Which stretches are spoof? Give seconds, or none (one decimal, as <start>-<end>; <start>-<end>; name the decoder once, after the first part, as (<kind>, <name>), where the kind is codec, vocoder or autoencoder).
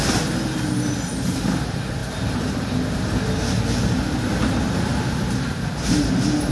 none